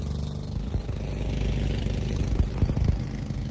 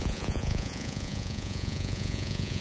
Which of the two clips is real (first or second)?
first